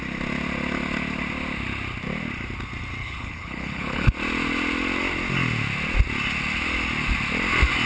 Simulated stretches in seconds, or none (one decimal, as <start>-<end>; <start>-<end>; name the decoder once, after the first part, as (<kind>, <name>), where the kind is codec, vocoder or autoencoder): 3.0-4.1 (codec, HILCodec)